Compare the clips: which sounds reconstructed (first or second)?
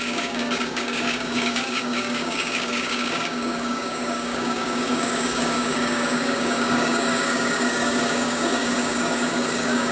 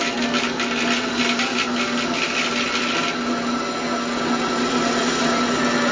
first